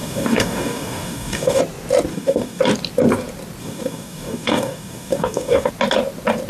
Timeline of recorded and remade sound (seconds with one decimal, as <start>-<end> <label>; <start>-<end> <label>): 0.0-1.6 remade; 1.6-2.1 recorded; 2.1-2.6 remade; 2.6-3.6 recorded; 3.6-5.7 remade; 5.7-6.5 recorded